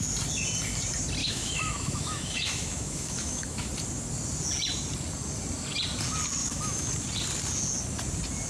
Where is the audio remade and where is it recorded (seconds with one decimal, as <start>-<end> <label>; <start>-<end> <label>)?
0.0-1.2 recorded; 1.2-3.7 remade; 3.7-6.4 recorded; 6.4-6.9 remade; 6.9-8.5 recorded